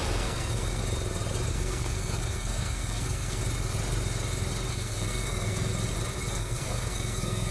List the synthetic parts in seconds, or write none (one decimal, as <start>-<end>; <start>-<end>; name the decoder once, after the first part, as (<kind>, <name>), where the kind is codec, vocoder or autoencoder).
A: 0.0-0.8 (codec, SNAC); 1.5-3.4; 4.7-5.7; 6.3-7.5